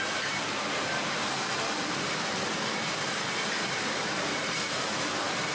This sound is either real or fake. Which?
fake